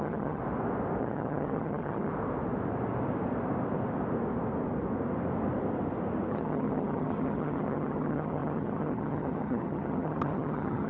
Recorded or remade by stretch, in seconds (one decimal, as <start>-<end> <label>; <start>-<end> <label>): 0.0-0.4 remade; 0.4-1.0 recorded; 1.0-2.1 remade; 2.1-6.3 recorded; 6.3-10.9 remade